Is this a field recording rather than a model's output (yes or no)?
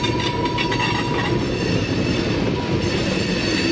yes